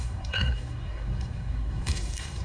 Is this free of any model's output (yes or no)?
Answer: no